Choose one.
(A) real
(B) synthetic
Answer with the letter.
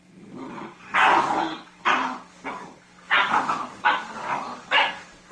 B